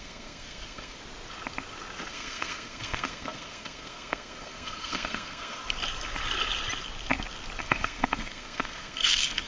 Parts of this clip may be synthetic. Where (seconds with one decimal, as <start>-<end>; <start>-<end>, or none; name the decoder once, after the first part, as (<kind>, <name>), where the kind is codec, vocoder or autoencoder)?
0.0-1.0 (codec, SNAC); 2.1-5.6; 7.6-9.5